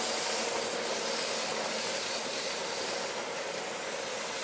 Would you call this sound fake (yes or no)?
no